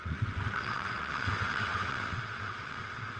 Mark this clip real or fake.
fake